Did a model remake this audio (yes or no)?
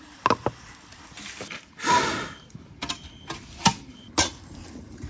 no